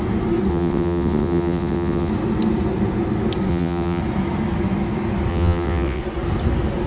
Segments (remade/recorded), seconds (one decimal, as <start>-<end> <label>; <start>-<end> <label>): 0.0-0.5 recorded; 0.5-2.1 remade; 2.1-3.5 recorded; 3.5-4.0 remade; 4.0-5.3 recorded; 5.3-6.0 remade; 6.0-6.9 recorded